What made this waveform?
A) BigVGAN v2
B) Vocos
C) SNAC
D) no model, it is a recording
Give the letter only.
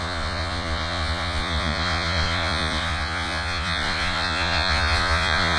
B